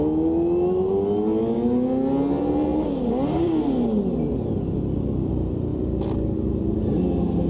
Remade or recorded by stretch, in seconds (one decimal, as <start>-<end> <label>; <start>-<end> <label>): 0.0-7.5 recorded

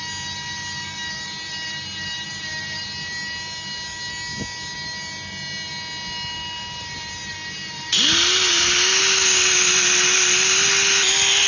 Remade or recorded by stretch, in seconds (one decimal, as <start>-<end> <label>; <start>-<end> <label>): 0.0-11.5 recorded

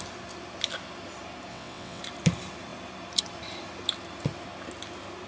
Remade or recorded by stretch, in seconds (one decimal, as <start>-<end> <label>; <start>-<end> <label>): 0.0-1.5 recorded; 1.5-2.0 remade; 2.0-5.3 recorded

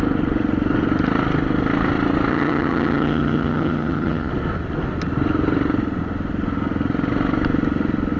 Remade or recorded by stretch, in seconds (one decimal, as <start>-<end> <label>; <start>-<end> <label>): 0.0-2.3 recorded; 2.3-4.3 remade; 4.3-8.2 recorded